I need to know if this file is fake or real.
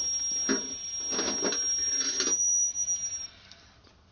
real